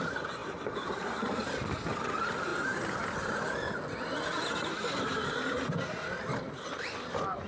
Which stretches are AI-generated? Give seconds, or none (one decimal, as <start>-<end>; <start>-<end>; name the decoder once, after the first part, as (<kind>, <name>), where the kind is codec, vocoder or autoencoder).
none